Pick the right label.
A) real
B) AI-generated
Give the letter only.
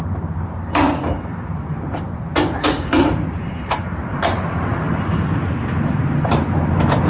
B